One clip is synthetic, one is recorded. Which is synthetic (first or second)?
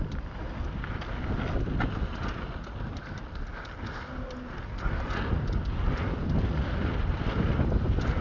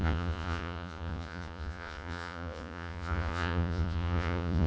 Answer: second